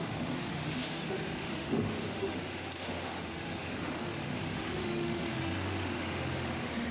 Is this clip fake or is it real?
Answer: fake